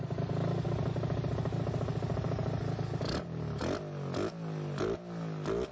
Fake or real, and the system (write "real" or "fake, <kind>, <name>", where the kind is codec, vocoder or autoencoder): real